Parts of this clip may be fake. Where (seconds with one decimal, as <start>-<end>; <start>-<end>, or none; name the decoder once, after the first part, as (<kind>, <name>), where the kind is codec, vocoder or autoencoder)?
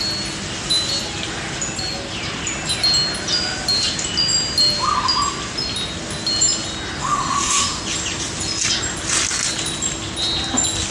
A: 7.0-7.8 (autoencoder, DAC-VAE)